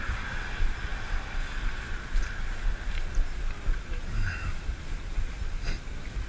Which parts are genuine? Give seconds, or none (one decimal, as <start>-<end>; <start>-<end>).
0.0-6.3